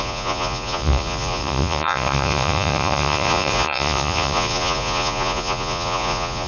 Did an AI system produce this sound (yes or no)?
yes